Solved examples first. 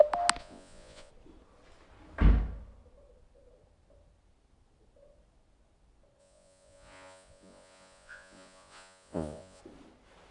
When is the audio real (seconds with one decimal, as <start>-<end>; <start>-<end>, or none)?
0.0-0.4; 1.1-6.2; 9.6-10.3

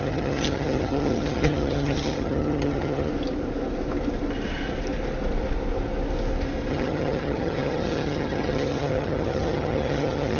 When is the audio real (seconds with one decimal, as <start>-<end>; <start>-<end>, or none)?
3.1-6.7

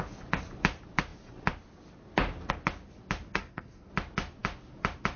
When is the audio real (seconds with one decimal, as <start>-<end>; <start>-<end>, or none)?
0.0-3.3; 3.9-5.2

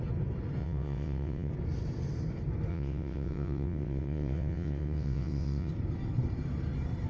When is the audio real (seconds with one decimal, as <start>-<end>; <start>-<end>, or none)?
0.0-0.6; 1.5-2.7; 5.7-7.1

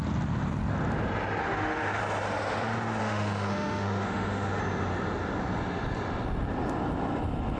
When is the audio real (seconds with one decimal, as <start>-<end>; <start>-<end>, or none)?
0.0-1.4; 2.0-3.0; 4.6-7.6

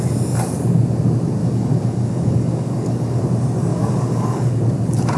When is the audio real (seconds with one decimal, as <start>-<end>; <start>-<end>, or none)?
0.0-1.4; 3.2-3.7; 4.6-5.2

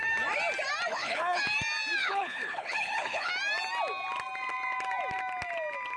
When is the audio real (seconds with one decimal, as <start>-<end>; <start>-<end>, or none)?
0.0-0.9; 1.4-2.0; 3.3-6.0

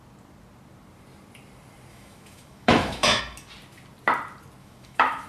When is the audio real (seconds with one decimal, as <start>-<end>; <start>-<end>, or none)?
0.0-1.9; 3.2-4.6